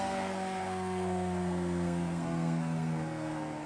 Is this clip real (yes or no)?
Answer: no